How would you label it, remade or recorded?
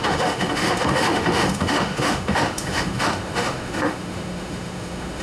remade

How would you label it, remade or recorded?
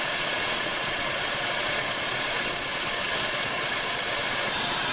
remade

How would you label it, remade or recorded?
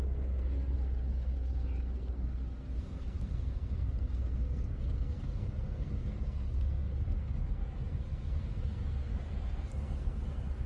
remade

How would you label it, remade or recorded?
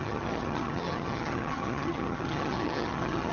remade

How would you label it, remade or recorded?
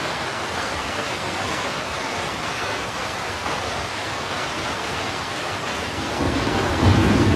remade